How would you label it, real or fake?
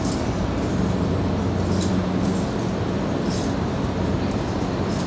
real